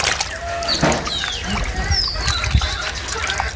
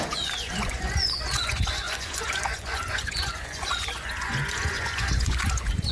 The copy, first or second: second